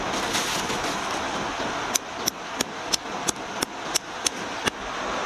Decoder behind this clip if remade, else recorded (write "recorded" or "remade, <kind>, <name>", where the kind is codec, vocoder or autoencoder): recorded